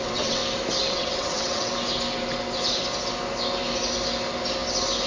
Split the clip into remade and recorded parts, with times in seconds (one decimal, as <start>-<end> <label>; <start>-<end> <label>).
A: 0.0-0.4 remade; 0.4-0.9 recorded; 0.9-1.7 remade; 1.7-5.1 recorded